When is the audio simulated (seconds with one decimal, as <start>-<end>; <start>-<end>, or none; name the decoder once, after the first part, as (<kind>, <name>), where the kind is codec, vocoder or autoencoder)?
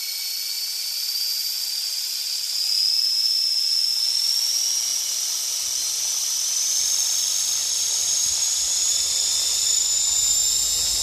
none